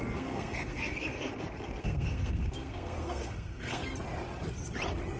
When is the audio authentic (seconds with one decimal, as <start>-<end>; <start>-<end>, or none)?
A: 1.3-1.8; 3.8-5.2